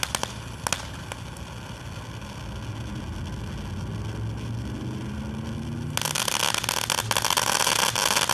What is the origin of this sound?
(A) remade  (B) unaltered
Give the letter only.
B